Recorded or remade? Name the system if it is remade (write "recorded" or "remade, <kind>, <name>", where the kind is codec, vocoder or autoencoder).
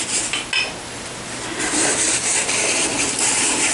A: recorded